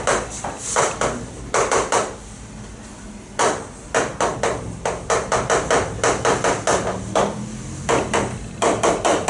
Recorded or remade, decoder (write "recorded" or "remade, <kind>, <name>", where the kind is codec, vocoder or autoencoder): recorded